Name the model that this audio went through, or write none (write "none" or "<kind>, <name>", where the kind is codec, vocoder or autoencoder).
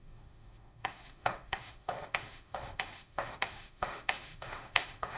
autoencoder, DAC-VAE